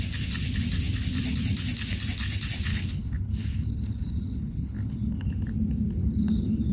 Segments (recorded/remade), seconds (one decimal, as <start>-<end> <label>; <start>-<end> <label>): 0.0-2.7 recorded; 2.7-5.3 remade; 5.3-6.0 recorded; 6.0-6.7 remade